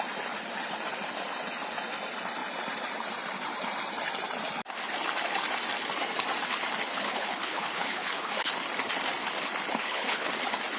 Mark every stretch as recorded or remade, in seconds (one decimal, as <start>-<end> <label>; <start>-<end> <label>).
0.0-6.9 recorded; 6.9-8.5 remade; 8.5-9.8 recorded; 9.8-10.3 remade; 10.3-10.8 recorded

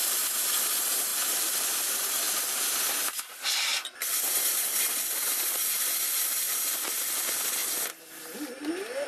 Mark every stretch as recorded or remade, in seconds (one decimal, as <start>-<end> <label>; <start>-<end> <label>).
0.0-9.1 recorded

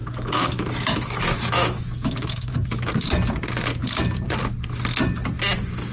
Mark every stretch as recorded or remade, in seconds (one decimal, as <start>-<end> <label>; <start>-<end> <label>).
0.0-2.5 remade; 2.5-5.9 recorded

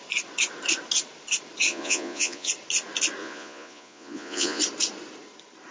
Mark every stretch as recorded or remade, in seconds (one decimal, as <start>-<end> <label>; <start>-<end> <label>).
0.0-1.7 recorded; 1.7-2.5 remade; 2.5-3.2 recorded; 3.2-4.6 remade; 4.6-5.7 recorded

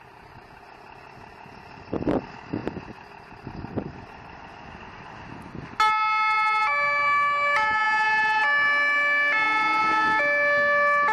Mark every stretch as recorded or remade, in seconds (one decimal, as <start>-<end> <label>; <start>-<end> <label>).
0.0-11.1 recorded

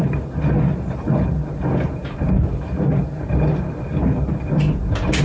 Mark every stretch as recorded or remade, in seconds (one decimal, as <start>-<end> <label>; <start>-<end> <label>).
0.0-5.2 recorded

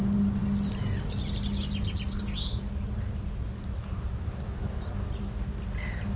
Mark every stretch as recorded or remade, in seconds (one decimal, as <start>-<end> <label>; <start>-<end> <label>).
0.0-6.2 recorded